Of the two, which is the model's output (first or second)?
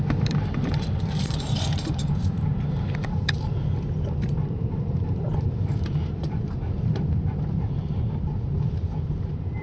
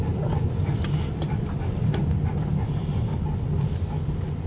first